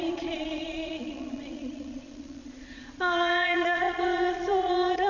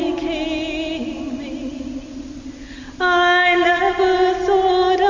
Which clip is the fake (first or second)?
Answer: first